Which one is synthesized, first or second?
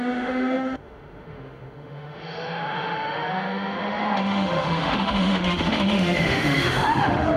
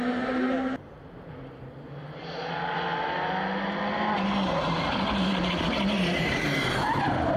first